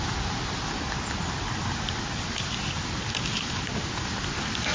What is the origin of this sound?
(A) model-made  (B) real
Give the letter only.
B